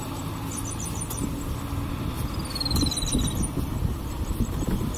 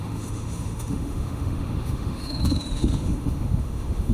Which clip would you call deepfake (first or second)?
second